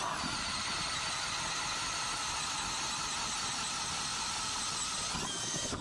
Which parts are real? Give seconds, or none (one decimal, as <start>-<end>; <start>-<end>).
0.0-4.1; 4.6-5.8